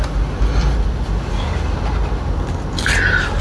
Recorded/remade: recorded